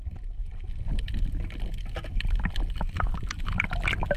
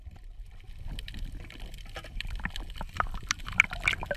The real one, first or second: first